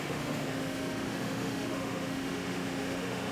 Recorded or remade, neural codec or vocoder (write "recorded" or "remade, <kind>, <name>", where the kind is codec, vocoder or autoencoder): remade, autoencoder, DAC-VAE